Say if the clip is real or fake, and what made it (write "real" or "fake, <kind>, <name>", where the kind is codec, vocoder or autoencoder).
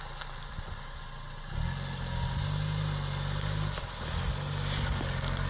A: real